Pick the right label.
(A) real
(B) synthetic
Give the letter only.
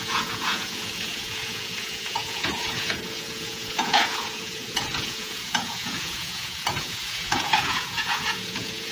B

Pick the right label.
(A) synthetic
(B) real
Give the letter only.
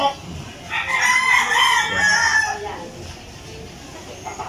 B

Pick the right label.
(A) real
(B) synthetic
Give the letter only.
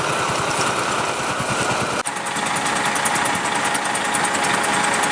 A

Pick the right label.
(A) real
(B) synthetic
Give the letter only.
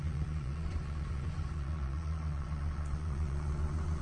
B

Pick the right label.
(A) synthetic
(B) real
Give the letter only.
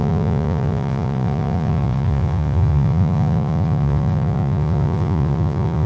A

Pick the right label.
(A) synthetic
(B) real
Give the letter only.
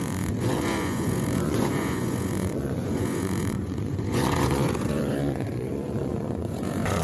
A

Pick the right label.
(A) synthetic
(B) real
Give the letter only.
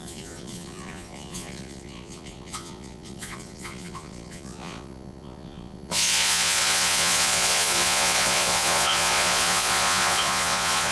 A